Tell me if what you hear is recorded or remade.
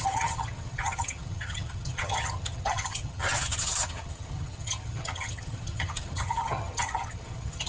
remade